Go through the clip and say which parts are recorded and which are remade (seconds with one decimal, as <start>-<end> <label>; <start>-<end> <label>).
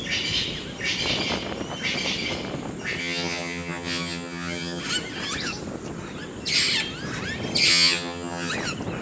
0.0-3.0 recorded; 3.0-4.8 remade; 4.8-7.7 recorded; 7.7-8.5 remade; 8.5-9.0 recorded